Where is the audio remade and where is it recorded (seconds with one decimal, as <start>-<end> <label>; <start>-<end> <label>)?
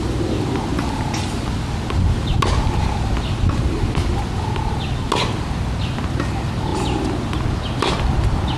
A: 0.0-8.6 recorded